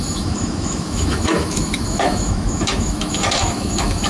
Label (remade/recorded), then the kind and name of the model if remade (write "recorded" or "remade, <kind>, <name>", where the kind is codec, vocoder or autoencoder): remade, autoencoder, DAC-VAE